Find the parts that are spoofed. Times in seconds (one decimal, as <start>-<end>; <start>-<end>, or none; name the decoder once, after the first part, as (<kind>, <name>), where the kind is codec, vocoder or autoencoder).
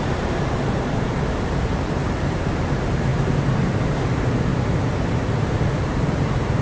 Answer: 0.0-3.1 (vocoder, BigVGAN v2); 3.9-6.6